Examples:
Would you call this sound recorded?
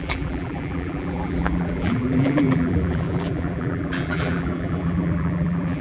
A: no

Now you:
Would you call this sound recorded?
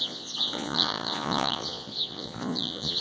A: no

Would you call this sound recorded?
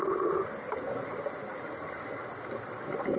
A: yes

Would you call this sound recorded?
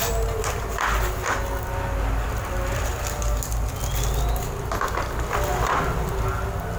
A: yes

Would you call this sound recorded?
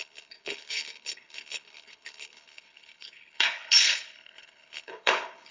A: no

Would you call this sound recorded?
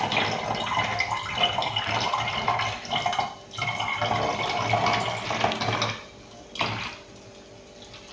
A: yes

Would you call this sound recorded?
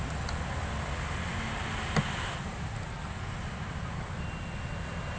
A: yes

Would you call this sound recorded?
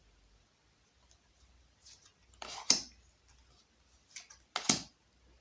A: yes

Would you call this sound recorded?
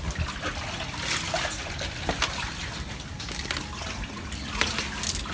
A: yes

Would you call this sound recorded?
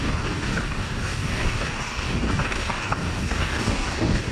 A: no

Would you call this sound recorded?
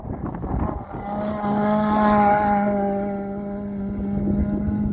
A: yes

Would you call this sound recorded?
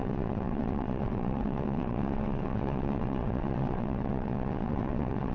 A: no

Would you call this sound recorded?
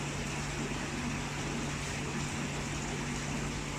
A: yes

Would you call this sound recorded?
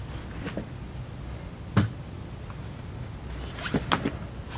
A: yes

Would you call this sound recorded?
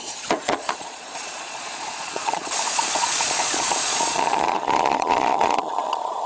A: no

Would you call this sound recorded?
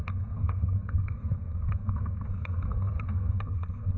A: no